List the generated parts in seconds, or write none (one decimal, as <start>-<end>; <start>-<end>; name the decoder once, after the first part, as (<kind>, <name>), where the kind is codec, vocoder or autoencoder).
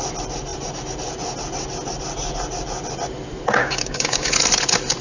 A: 3.6-4.3 (codec, DAC)